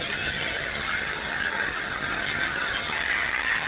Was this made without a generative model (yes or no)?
no